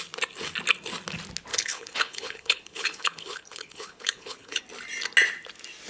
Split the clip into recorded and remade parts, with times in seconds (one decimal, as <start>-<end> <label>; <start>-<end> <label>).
0.0-1.5 recorded; 1.5-4.6 remade; 4.6-5.9 recorded